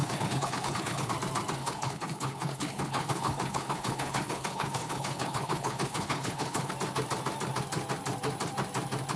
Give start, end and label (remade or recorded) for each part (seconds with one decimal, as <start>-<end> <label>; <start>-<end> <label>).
0.0-1.1 remade; 1.1-1.6 recorded; 1.6-6.7 remade; 6.7-9.2 recorded